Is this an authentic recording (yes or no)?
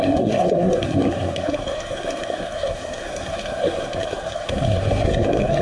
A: no